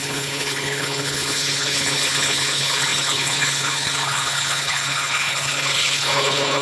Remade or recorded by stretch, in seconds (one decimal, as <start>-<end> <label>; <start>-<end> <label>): 0.0-6.6 remade